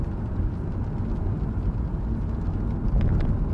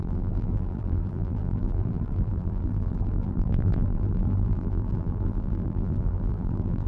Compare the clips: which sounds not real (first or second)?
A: second